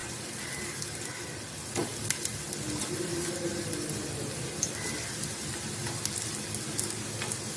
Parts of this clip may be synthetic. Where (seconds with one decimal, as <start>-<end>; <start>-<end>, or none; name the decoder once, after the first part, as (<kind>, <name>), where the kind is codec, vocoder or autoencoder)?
0.0-0.7 (vocoder, BigVGAN v2)